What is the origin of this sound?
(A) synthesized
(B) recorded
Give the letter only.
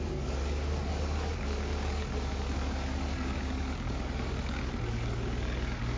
A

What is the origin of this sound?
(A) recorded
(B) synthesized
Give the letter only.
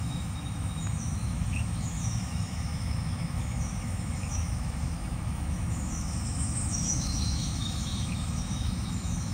B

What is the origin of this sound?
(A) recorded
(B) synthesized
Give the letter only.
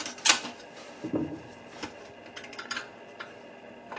A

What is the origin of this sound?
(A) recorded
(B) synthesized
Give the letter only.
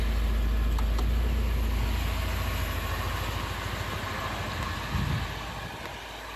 A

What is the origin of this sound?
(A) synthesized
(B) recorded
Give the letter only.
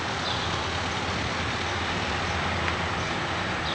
B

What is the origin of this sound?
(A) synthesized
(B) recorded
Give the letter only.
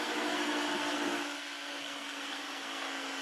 A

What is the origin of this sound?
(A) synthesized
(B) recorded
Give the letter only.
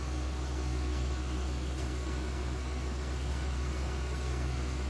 A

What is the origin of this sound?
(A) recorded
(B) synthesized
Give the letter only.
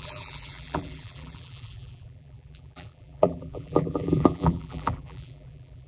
B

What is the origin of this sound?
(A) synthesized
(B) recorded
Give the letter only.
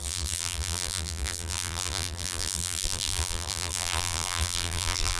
A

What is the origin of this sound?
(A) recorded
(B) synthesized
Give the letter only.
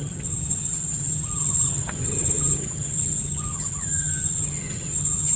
B